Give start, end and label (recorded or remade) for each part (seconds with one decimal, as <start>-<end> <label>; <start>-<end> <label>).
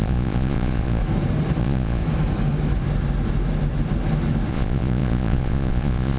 0.0-1.0 remade; 1.0-1.6 recorded; 1.6-2.0 remade; 2.0-4.5 recorded; 4.5-6.2 remade